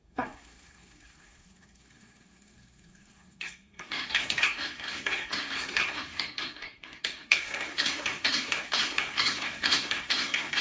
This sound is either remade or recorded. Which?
remade